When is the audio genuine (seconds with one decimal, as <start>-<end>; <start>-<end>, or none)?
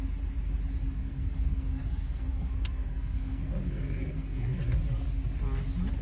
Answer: 0.0-1.0; 4.6-6.0